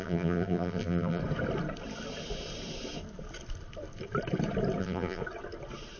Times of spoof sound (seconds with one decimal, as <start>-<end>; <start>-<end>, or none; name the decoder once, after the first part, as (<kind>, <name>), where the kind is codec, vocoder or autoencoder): 0.0-1.2 (vocoder, BigVGAN v2); 4.8-5.2